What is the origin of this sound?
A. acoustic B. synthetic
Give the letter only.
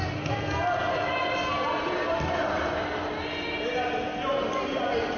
A